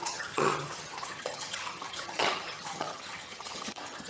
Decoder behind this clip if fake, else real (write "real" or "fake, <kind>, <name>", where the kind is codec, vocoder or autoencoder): fake, vocoder, HiFi-GAN